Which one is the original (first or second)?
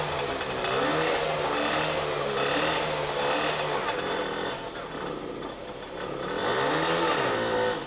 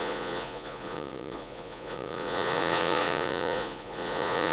first